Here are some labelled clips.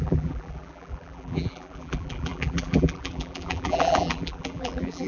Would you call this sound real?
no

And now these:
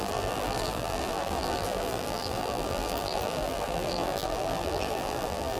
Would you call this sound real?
no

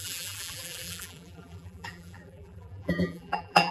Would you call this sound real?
no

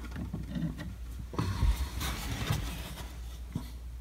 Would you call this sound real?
yes